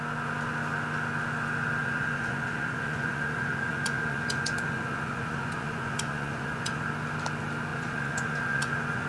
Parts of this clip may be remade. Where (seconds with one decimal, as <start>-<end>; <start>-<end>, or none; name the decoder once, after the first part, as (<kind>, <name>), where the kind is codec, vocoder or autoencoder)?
1.8-6.8 (vocoder, Vocos); 7.7-9.1